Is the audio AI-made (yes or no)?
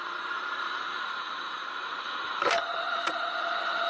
yes